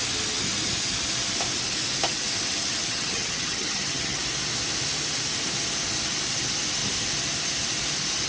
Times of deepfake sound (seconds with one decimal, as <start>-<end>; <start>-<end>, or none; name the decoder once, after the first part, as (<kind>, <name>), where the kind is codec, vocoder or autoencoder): 2.8-4.2 (vocoder, HiFi-GAN)